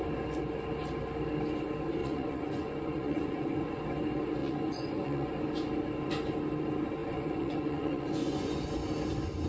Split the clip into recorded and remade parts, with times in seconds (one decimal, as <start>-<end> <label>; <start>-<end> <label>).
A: 0.0-2.0 recorded; 2.0-3.8 remade; 3.8-4.4 recorded; 4.4-5.3 remade; 5.3-7.0 recorded; 7.0-8.6 remade; 8.6-9.5 recorded